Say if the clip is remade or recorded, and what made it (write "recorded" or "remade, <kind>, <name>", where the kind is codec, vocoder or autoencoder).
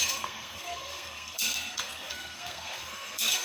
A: remade, codec, SNAC